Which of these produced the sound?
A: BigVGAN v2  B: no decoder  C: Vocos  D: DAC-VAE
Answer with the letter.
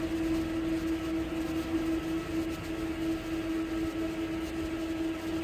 B